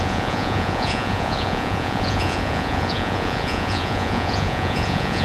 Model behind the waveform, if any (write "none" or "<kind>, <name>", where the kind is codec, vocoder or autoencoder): vocoder, Vocos